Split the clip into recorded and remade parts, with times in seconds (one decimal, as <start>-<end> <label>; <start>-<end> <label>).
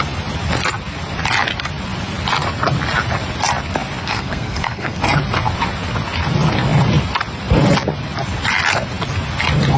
0.0-4.0 recorded; 4.0-5.0 remade; 5.0-9.8 recorded